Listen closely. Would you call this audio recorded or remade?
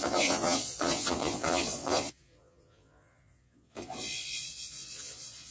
remade